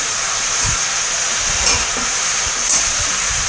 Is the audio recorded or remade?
remade